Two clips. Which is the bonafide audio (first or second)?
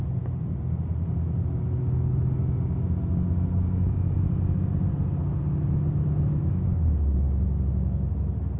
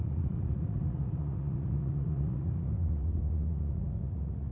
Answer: first